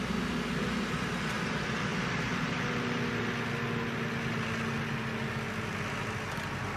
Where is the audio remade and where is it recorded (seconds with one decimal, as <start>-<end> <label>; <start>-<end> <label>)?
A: 0.0-6.8 recorded